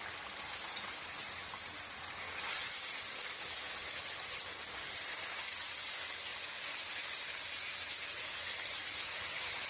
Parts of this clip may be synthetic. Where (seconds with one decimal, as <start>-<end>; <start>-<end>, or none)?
none